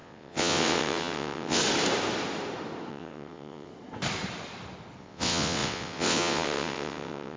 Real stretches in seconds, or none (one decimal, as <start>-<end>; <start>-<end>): 1.6-2.9; 3.7-5.0